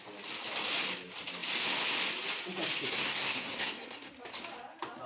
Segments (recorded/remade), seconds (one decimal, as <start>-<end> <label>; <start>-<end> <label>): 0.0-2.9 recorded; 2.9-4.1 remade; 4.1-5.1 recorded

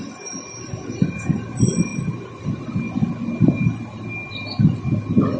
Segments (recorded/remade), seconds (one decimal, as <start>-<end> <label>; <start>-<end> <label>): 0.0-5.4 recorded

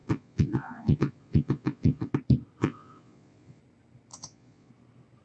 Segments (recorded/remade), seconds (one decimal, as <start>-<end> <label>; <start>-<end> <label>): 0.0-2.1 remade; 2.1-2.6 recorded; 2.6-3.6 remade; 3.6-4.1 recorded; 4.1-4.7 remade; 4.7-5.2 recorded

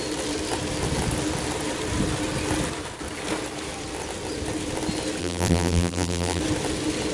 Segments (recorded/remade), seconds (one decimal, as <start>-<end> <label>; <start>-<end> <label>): 0.0-5.2 recorded; 5.2-6.4 remade; 6.4-7.1 recorded